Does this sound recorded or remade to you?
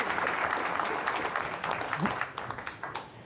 recorded